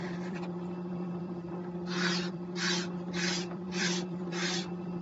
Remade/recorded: remade